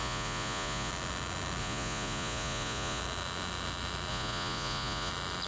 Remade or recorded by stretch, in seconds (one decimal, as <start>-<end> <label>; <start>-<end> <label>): 0.0-0.9 remade; 0.9-1.6 recorded; 1.6-3.0 remade; 3.0-4.1 recorded; 4.1-5.1 remade; 5.1-5.5 recorded